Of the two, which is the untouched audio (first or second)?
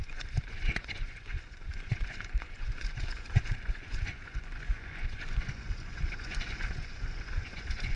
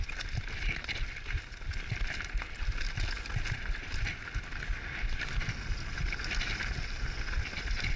second